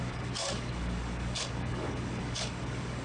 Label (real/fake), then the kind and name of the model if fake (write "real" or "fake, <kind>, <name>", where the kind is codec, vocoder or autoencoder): fake, codec, DAC